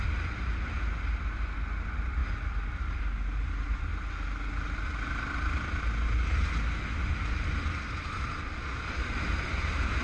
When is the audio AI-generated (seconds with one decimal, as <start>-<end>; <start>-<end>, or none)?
0.0-3.9; 7.2-10.0